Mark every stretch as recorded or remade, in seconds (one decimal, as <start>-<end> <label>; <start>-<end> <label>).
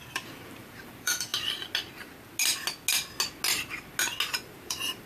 0.0-1.3 remade; 1.3-4.4 recorded; 4.4-5.1 remade